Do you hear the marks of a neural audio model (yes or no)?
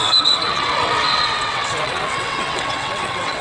yes